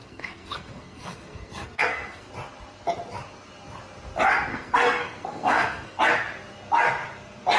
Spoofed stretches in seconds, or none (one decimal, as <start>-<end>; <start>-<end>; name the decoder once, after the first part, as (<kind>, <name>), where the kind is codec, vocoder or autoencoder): 0.0-2.3 (codec, SNAC); 4.5-6.0